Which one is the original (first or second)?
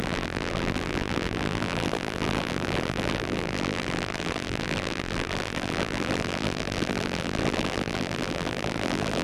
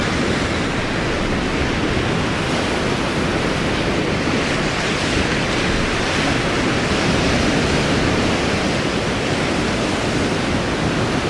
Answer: second